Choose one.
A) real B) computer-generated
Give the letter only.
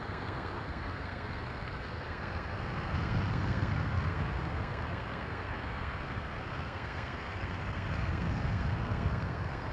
B